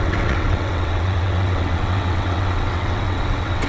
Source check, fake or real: fake